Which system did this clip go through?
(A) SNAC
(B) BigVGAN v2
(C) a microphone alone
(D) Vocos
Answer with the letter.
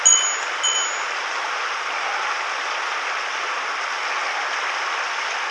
C